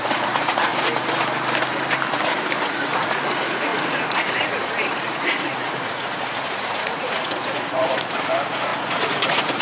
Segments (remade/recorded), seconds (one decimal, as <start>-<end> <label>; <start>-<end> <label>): 0.0-0.7 remade; 0.7-2.6 recorded; 2.6-9.6 remade